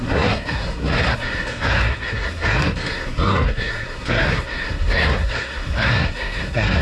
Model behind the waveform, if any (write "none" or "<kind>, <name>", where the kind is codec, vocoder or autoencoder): codec, SNAC